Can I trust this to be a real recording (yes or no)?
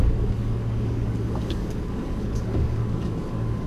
no